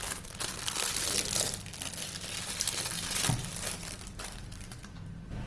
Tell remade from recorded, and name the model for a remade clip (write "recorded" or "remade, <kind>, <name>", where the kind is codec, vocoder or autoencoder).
recorded